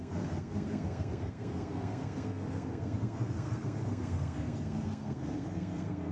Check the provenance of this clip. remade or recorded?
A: remade